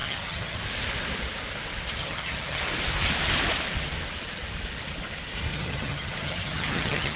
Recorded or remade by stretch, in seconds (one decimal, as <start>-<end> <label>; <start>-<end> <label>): 0.0-0.6 remade; 0.6-2.0 recorded; 2.0-2.6 remade; 2.6-5.5 recorded; 5.5-7.2 remade